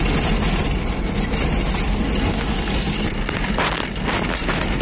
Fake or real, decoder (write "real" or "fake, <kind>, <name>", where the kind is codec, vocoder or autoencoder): real